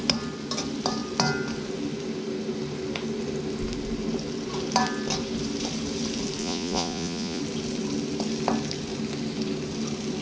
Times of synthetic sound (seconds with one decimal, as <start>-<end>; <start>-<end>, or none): 6.4-7.4